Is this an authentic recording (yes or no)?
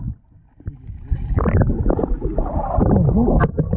yes